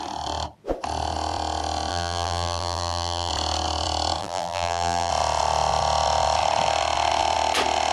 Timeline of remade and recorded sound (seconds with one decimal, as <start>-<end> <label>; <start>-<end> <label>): 0.0-1.9 recorded; 1.9-3.3 remade; 3.3-4.2 recorded; 4.2-5.1 remade; 5.1-7.9 recorded